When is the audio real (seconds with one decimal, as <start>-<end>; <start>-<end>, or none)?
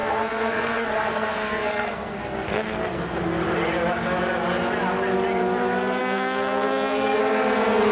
3.2-6.0; 7.2-7.9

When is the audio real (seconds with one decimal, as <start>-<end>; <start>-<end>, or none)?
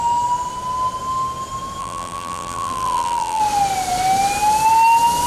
0.0-1.8; 3.4-5.3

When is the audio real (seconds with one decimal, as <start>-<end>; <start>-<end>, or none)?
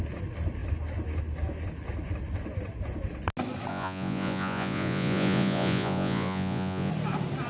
0.0-3.7; 6.9-7.5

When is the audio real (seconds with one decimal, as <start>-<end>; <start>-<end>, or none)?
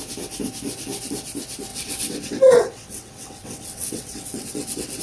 0.0-1.7